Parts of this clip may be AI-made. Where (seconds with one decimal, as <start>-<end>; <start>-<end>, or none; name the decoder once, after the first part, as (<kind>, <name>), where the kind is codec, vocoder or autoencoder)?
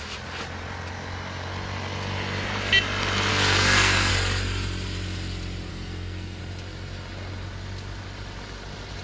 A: 3.3-4.1 (codec, SNAC); 5.7-6.4